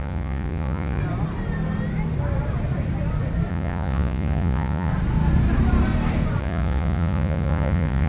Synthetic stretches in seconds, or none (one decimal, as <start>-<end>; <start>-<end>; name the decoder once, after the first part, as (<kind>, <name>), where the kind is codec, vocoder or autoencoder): 0.0-1.0 (vocoder, Vocos); 3.5-4.9; 6.4-8.1

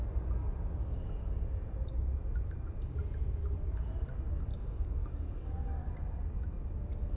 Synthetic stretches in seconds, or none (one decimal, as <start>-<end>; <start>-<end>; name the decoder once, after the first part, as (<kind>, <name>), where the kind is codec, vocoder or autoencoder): 4.5-5.9 (codec, DAC)

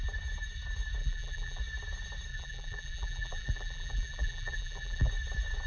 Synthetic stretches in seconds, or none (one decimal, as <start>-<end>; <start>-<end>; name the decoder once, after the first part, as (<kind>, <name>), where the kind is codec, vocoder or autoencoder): 1.0-1.6 (vocoder, BigVGAN v2); 2.3-5.1

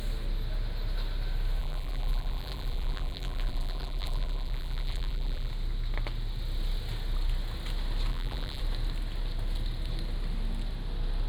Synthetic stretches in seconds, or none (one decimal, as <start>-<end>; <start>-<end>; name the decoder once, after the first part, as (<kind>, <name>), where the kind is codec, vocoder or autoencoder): 1.6-5.5 (vocoder, BigVGAN v2); 8.1-8.6

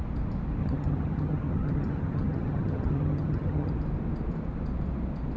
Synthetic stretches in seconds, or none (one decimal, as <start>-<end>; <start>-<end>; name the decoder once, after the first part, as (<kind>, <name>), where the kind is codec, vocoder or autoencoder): 0.6-3.7 (vocoder, HiFi-GAN)

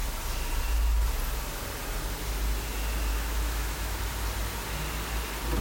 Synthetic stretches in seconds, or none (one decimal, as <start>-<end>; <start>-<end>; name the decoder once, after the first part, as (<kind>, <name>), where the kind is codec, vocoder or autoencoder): 3.1-4.0 (autoencoder, DAC-VAE)

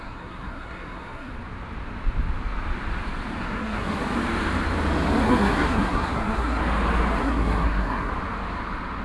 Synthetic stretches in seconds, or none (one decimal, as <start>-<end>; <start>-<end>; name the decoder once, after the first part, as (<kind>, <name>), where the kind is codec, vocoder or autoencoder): 0.0-1.3 (codec, SNAC); 3.4-4.0; 5.2-6.6; 7.2-8.1

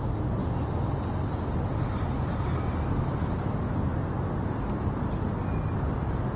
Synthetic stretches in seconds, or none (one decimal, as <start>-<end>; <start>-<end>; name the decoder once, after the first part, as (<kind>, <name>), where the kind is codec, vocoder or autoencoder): none